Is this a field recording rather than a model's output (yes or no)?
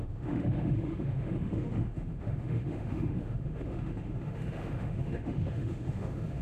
no